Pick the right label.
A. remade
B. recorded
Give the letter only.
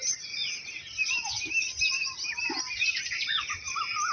A